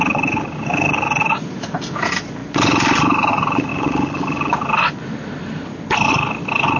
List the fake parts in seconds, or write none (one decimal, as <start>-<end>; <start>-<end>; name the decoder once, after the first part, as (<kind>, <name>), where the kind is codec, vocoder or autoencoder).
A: none